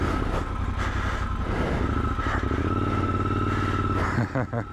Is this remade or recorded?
recorded